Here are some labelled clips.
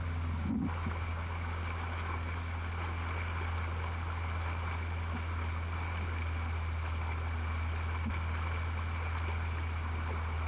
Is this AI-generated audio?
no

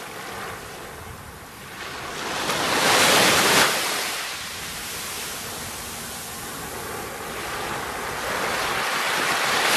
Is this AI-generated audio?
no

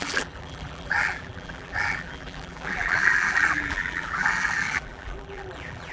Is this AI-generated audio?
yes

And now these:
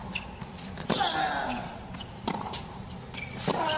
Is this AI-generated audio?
no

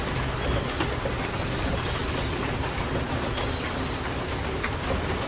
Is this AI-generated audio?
yes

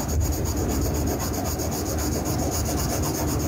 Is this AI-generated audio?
no